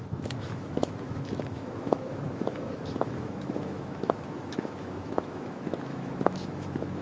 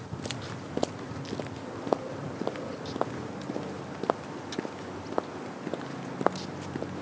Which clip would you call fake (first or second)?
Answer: first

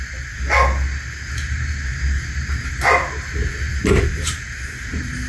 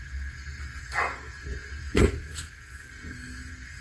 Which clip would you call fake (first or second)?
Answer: second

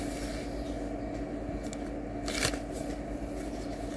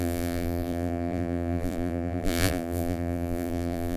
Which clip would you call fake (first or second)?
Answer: second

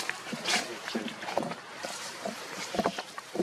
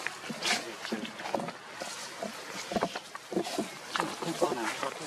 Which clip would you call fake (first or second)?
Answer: first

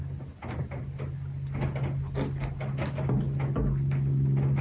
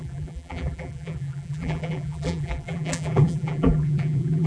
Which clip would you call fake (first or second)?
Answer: second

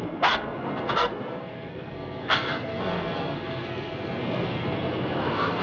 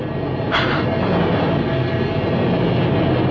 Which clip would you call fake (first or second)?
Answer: first